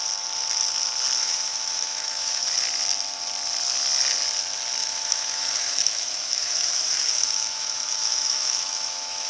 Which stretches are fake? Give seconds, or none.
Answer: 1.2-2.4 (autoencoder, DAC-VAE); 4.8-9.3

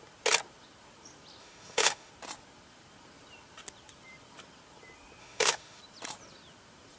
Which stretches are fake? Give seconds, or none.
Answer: 1.4-2.1 (autoencoder, DAC-VAE); 5.2-5.8

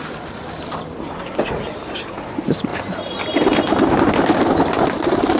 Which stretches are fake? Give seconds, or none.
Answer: none

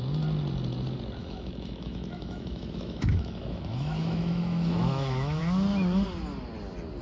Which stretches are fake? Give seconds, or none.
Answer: 1.2-5.4 (autoencoder, DAC-VAE)

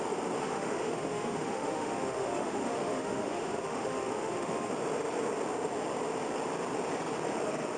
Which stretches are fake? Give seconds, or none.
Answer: 0.4-4.7 (autoencoder, DAC-VAE)

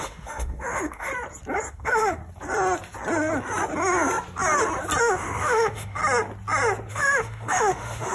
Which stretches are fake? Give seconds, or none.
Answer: 0.0-1.1 (autoencoder, DAC-VAE); 1.7-2.2; 5.0-6.0; 6.9-8.1

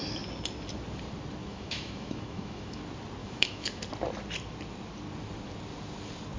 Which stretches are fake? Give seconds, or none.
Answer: 1.4-2.8 (autoencoder, DAC-VAE); 3.2-3.8

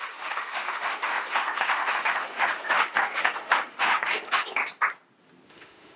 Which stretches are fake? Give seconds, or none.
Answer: 0.0-4.6 (autoencoder, DAC-VAE); 5.5-6.0